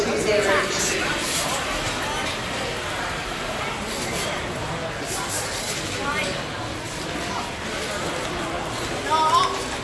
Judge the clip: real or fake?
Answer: real